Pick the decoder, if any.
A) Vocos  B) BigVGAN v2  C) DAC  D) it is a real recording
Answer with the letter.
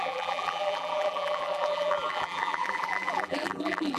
B